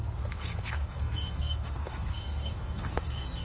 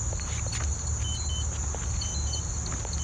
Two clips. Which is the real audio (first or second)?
second